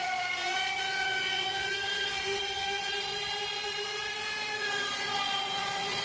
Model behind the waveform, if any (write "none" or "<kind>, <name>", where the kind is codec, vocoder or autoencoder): vocoder, Vocos